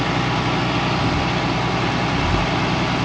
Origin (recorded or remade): recorded